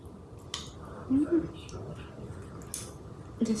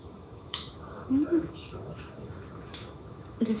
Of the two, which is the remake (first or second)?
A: second